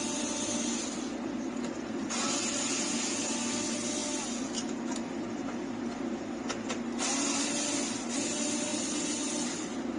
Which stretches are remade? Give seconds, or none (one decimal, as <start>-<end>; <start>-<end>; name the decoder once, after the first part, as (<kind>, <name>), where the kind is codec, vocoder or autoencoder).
none